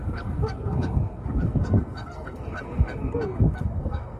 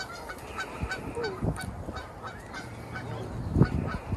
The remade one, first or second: first